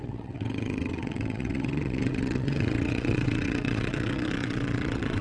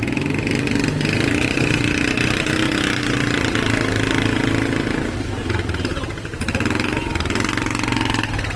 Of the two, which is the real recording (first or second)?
second